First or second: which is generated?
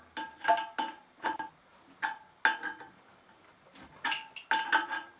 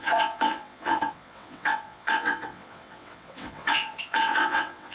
second